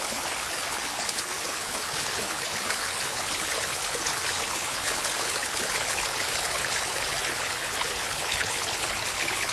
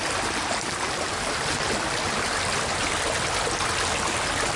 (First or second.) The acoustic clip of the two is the second